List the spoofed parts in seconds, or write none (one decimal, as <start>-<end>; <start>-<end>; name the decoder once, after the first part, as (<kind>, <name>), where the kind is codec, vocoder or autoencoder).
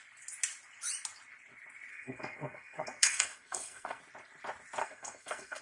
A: 1.9-4.0 (codec, SNAC); 4.8-5.6